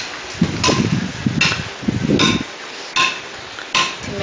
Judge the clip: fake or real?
real